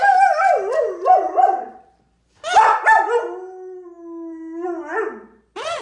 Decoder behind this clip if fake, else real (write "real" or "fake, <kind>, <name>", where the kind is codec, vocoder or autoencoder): real